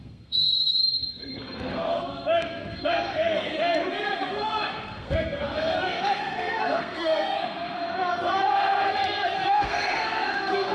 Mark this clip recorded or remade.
remade